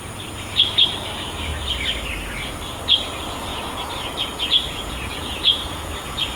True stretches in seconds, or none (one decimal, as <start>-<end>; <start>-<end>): 0.0-3.5

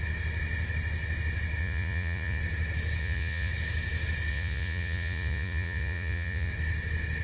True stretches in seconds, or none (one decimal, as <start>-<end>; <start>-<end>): 0.0-1.6; 2.4-3.0; 3.5-4.3; 6.5-7.2

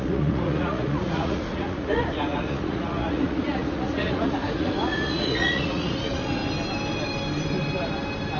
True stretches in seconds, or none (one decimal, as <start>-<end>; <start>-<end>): 6.4-8.4